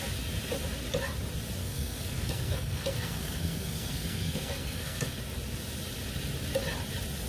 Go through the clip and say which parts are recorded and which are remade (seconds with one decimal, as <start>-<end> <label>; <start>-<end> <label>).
0.0-1.6 recorded; 1.6-5.2 remade; 5.2-7.3 recorded